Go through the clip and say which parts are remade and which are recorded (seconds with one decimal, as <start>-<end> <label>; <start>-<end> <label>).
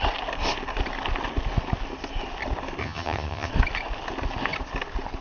0.0-2.8 recorded; 2.8-3.5 remade; 3.5-5.2 recorded